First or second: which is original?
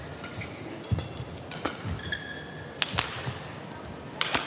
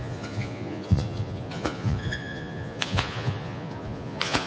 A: first